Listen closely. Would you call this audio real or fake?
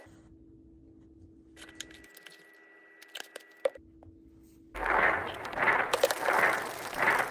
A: real